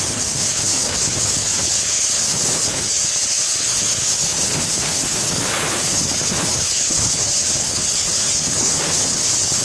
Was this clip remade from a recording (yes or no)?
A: yes